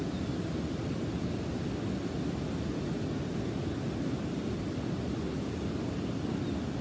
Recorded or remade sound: recorded